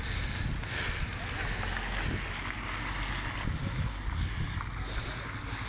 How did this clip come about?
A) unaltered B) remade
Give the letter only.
A